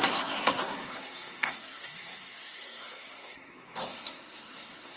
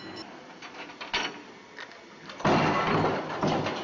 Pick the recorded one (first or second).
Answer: second